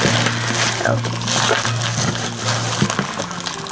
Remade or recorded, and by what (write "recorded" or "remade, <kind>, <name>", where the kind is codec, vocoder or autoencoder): recorded